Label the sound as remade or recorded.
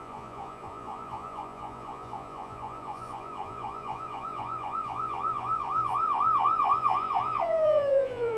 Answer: remade